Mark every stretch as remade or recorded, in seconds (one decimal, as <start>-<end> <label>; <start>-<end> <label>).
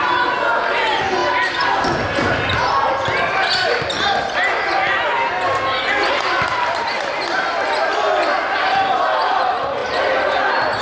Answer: 0.0-10.8 recorded